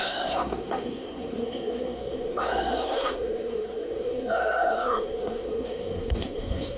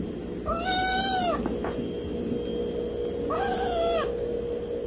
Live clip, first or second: second